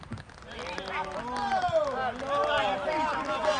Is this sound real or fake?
real